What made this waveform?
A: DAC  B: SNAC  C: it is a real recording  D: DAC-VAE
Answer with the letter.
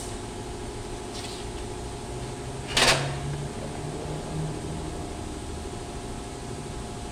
C